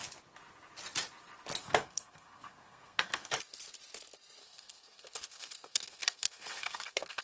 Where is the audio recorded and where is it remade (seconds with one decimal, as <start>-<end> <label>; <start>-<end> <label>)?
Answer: 0.0-1.6 recorded; 1.6-3.3 remade; 3.3-4.4 recorded; 4.4-7.2 remade